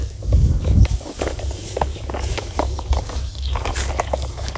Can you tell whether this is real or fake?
fake